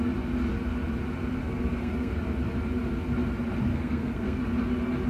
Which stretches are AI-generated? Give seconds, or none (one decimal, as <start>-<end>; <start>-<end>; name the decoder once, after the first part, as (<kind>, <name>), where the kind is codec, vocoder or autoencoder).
1.4-2.1 (codec, SNAC); 3.7-4.4